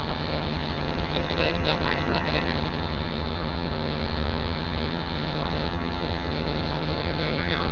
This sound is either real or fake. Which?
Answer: fake